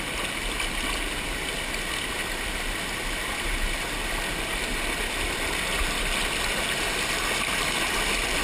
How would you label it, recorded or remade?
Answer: recorded